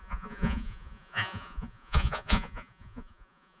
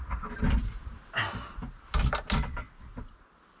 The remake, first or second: first